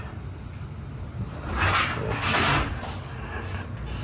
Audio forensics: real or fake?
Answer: real